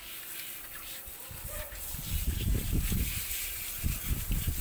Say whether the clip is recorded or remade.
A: remade